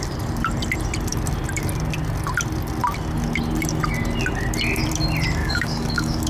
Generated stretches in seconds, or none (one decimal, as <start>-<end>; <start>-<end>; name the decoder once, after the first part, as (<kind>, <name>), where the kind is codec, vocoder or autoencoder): 5.4-6.3 (codec, DAC)